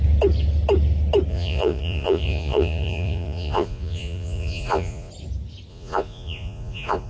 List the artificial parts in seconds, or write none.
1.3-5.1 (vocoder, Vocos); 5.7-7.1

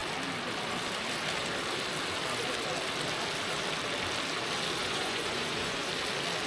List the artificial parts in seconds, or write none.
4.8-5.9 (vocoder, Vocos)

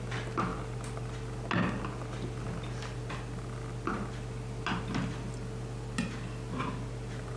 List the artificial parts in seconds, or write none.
none